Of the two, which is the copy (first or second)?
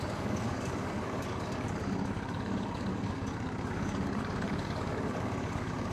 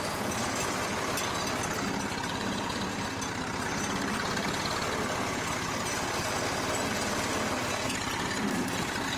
first